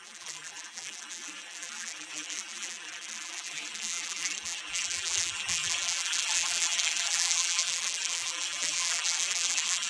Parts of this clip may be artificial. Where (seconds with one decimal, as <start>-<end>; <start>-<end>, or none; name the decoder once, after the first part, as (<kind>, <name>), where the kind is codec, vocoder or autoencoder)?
0.0-9.9 (vocoder, BigVGAN v2)